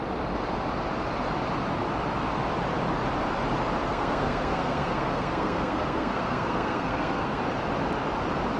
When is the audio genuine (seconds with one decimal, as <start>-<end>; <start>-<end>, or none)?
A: 0.0-3.8; 7.4-8.6